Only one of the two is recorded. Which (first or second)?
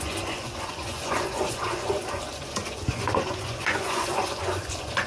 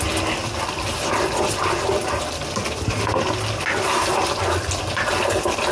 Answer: second